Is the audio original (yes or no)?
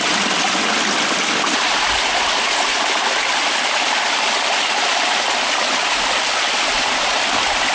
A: yes